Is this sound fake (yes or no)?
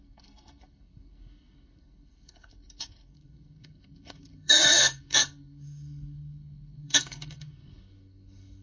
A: yes